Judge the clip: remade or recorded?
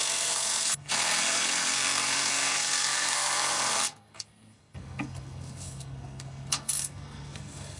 remade